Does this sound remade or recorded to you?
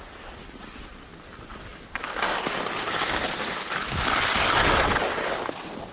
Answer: recorded